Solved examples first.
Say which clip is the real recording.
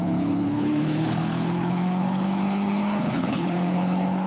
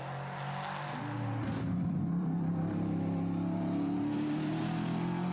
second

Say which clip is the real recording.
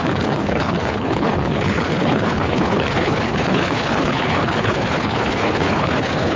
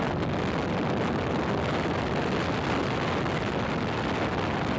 second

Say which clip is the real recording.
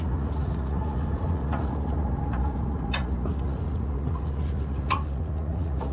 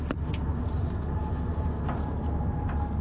second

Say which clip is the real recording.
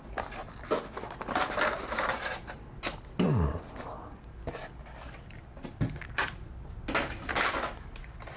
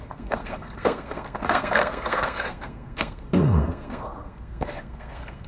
first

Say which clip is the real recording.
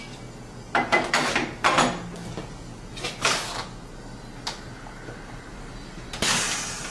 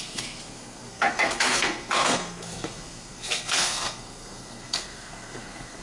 first